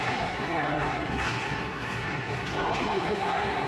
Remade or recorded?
remade